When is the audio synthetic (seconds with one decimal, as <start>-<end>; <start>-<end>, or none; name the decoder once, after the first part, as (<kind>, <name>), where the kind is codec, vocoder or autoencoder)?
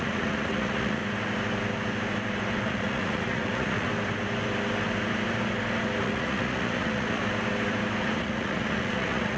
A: 0.0-1.0 (vocoder, Vocos); 2.6-3.9; 6.0-7.2; 8.0-9.4